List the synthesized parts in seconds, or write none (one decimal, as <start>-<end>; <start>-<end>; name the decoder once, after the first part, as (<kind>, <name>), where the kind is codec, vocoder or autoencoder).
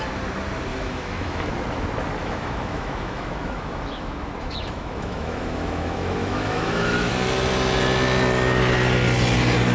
0.7-1.5 (autoencoder, DAC-VAE); 2.2-7.1